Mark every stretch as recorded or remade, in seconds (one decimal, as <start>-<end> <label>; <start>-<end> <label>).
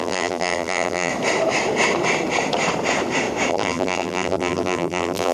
0.0-1.1 remade; 1.1-3.5 recorded; 3.5-5.3 remade